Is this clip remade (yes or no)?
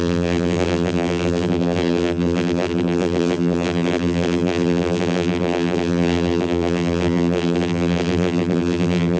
yes